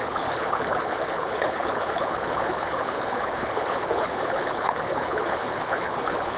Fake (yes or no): yes